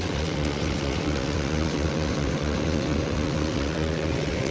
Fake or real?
fake